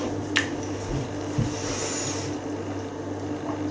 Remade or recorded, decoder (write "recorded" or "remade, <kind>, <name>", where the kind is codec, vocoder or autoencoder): recorded